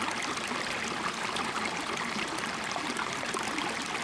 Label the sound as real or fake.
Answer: real